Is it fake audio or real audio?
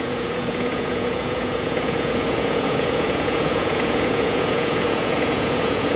fake